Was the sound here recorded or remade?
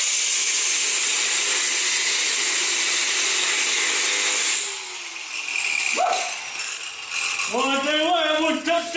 recorded